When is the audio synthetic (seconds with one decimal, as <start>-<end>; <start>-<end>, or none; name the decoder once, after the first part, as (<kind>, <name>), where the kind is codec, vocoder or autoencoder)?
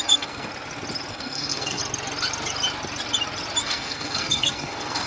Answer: 0.0-0.5 (codec, SNAC); 1.1-1.8; 3.6-5.1